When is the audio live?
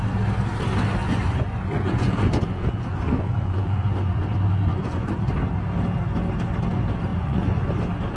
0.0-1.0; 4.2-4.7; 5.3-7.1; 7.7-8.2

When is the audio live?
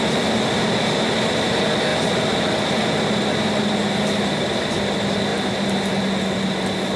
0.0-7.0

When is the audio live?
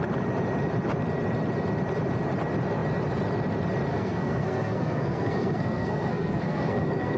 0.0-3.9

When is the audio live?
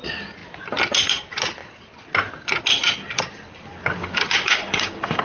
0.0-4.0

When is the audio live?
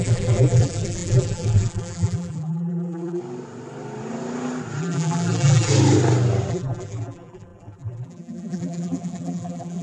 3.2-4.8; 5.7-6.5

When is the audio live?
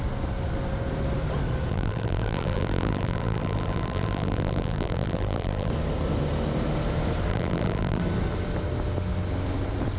0.0-1.7; 5.7-7.3; 8.0-10.0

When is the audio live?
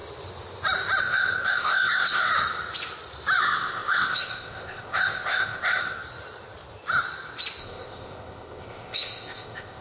0.0-1.0; 2.3-3.4; 6.0-7.6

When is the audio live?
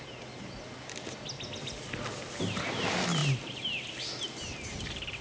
0.0-5.2